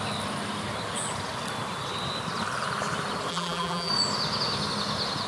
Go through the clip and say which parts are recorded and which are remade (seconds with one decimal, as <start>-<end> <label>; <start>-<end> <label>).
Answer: 0.0-3.3 recorded; 3.3-3.9 remade; 3.9-5.3 recorded